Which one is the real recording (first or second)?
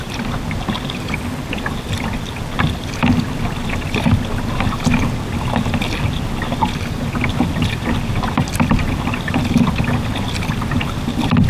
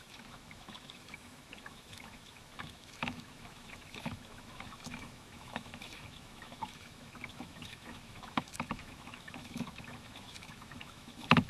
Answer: first